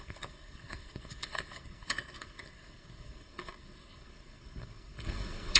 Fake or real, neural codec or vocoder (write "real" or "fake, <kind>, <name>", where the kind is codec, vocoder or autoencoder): fake, codec, SNAC